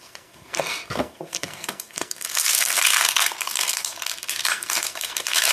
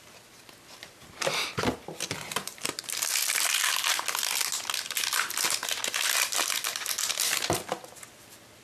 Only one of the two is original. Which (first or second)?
second